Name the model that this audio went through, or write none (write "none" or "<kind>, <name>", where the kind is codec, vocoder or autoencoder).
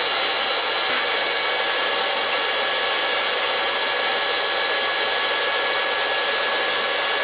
none